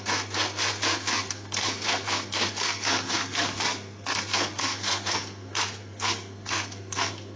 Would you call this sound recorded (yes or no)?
no